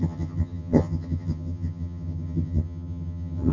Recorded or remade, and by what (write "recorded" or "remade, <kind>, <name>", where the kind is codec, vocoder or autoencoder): remade, vocoder, HiFi-GAN